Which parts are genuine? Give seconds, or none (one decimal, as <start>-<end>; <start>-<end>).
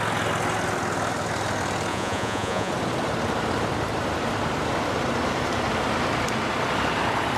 0.0-1.9; 2.7-7.4